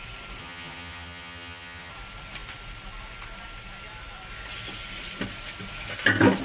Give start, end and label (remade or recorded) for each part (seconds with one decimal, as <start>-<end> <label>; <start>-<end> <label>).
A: 0.0-0.4 recorded; 0.4-1.9 remade; 1.9-6.4 recorded